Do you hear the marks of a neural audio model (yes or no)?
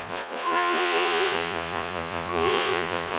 yes